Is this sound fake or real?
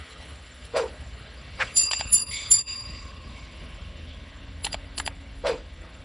fake